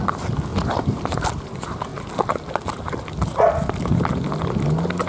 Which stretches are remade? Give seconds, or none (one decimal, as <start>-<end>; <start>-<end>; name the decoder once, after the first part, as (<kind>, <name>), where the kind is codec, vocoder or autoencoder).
0.5-1.5 (vocoder, BigVGAN v2)